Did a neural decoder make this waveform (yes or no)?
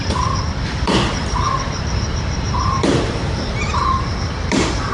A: yes